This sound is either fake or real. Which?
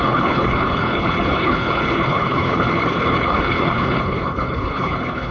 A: fake